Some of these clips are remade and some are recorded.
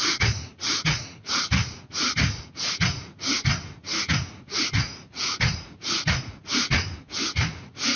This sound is remade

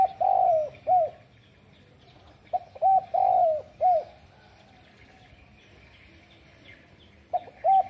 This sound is recorded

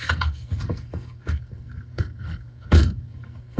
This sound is remade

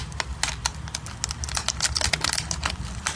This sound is recorded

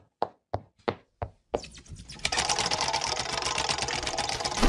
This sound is recorded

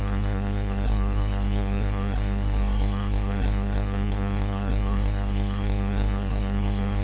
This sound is remade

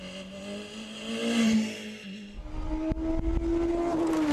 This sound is recorded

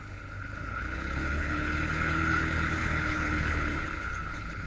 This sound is remade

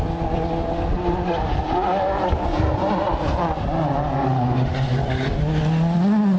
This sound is recorded